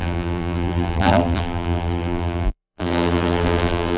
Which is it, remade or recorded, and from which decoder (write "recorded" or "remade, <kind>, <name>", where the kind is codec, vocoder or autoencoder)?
remade, vocoder, BigVGAN v2